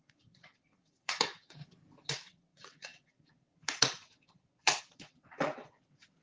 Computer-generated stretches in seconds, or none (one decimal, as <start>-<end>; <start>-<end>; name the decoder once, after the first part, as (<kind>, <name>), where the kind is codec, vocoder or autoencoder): 0.0-1.6 (vocoder, WaveNeXt); 2.1-6.2